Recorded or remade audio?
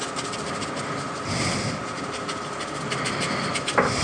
recorded